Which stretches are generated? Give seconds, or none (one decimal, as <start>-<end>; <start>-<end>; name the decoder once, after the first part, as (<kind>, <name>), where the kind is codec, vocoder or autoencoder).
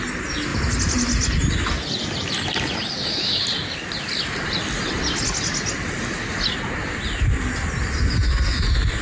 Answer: none